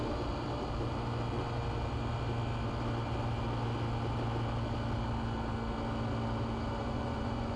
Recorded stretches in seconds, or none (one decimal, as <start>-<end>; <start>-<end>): 0.0-6.8